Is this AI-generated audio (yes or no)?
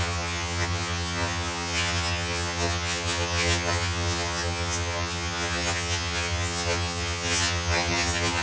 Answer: yes